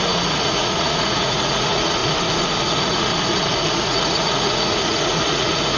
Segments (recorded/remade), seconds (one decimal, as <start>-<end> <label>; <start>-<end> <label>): 0.0-2.0 remade; 2.0-2.6 recorded; 2.6-3.1 remade; 3.1-3.7 recorded; 3.7-5.8 remade